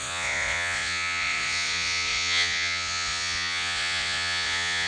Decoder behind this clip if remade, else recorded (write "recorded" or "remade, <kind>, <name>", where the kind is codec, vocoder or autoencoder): remade, vocoder, Vocos